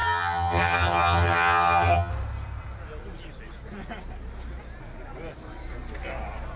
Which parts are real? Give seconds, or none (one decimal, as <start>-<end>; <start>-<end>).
2.1-6.6